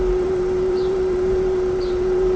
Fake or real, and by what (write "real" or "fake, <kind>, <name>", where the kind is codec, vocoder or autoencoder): fake, vocoder, BigVGAN v2